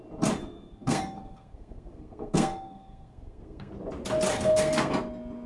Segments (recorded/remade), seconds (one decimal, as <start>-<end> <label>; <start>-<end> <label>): 0.0-0.4 recorded; 0.4-3.7 remade; 3.7-4.3 recorded; 4.3-4.9 remade; 4.9-5.5 recorded